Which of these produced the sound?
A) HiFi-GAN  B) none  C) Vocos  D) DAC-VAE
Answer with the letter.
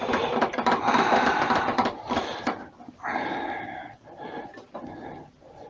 B